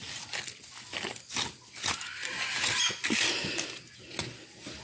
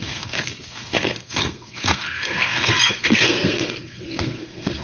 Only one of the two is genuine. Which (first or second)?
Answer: first